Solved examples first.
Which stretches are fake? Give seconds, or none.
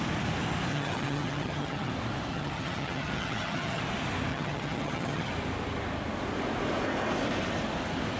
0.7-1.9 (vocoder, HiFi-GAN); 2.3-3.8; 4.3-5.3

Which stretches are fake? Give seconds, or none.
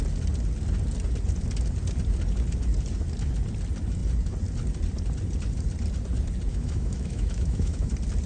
6.5-7.9 (autoencoder, DAC-VAE)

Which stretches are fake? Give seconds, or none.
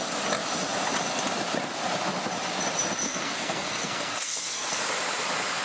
3.0-4.8 (codec, SNAC)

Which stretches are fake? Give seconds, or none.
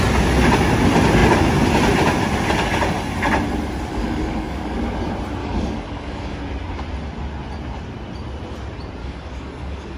3.9-4.8 (codec, DAC); 5.4-6.4; 9.0-10.0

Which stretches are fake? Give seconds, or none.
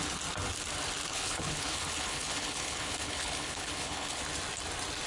1.1-4.2 (codec, HILCodec)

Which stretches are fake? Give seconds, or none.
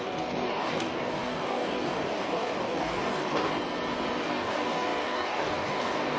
0.0-3.5 (codec, DAC); 4.2-6.2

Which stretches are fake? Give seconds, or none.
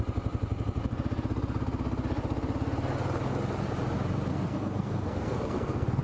4.3-6.0 (codec, SNAC)